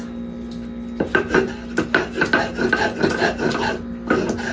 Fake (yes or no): no